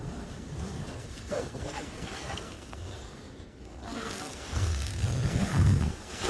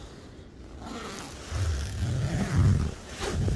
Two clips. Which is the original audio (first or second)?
second